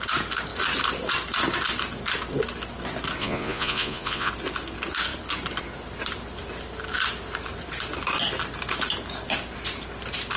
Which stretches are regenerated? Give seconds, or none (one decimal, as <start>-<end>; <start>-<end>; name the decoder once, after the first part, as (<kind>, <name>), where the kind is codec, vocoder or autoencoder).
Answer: 3.2-4.3 (vocoder, Vocos)